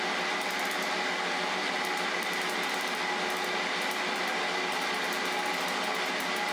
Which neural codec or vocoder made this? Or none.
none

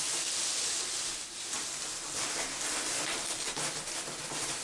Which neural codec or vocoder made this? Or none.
none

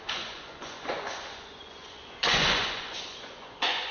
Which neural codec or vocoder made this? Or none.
vocoder, Vocos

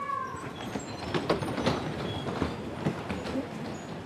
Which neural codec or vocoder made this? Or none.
none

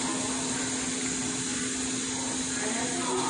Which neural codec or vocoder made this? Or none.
none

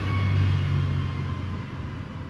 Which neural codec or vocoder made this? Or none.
none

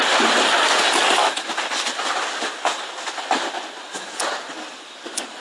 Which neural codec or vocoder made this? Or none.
none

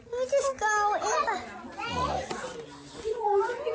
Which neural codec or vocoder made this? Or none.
none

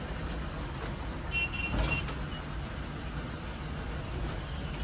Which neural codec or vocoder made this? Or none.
none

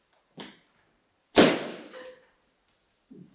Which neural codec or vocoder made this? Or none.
none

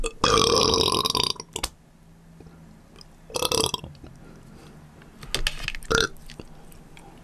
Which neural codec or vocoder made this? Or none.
none